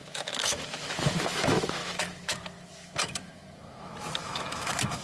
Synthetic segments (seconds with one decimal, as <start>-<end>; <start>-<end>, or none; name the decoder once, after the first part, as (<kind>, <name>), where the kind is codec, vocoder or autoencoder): 0.0-5.0 (autoencoder, DAC-VAE)